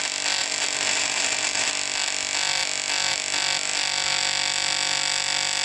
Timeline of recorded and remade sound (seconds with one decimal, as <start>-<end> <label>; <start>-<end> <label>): 0.0-0.4 recorded; 0.4-1.7 remade; 1.7-5.6 recorded

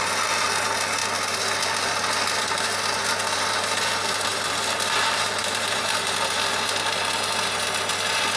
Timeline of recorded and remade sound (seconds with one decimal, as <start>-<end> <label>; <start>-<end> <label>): 0.0-4.3 recorded; 4.3-5.8 remade; 5.8-8.4 recorded

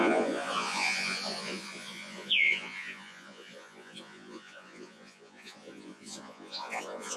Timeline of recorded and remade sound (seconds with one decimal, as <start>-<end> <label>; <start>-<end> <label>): 0.0-7.2 remade

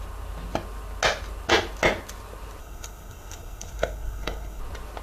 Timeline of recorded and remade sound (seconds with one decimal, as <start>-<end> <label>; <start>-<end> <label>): 0.0-2.6 recorded; 2.6-4.6 remade; 4.6-5.0 recorded

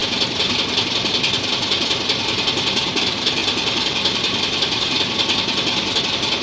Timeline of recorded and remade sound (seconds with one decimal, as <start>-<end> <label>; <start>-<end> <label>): 0.0-3.4 recorded; 3.4-6.0 remade; 6.0-6.4 recorded

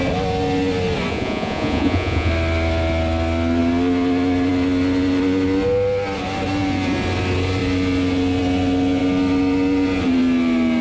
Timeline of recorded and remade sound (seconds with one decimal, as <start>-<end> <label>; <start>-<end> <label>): 0.0-1.1 recorded; 1.1-2.3 remade; 2.3-10.8 recorded

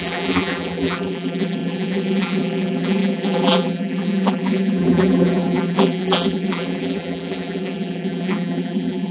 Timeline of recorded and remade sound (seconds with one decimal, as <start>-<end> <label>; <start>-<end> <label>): 0.0-9.1 remade

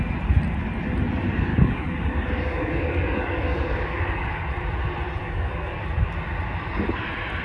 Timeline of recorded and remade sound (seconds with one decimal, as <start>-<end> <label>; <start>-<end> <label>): 0.0-1.5 recorded; 1.5-4.5 remade; 4.5-5.2 recorded; 5.2-5.8 remade; 5.8-7.4 recorded